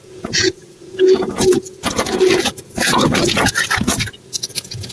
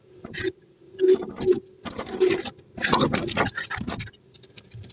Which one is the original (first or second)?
second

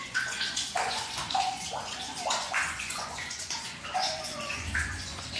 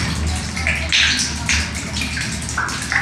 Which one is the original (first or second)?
second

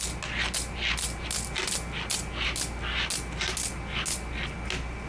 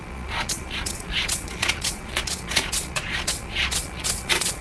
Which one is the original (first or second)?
first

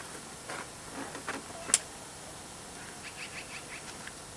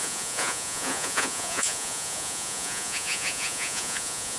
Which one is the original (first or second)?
first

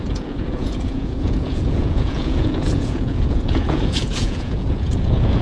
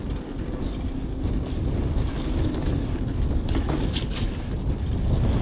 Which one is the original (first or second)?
second